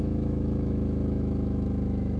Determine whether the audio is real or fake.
fake